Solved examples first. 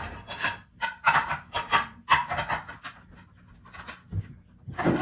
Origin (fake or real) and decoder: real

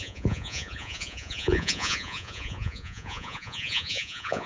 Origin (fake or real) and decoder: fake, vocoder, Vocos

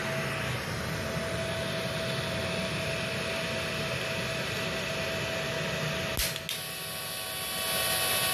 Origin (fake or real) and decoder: real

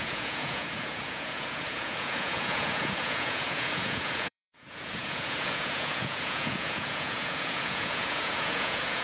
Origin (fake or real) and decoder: fake, vocoder, Vocos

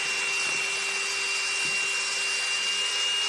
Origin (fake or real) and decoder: real